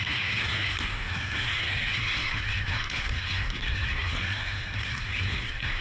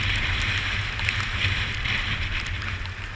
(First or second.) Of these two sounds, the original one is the second